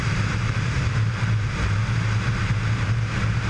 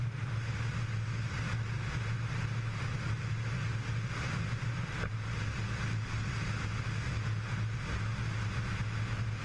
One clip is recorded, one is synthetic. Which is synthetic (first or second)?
first